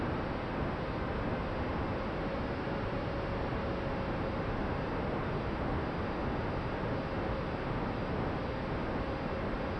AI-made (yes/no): no